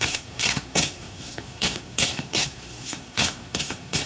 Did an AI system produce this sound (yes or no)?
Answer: yes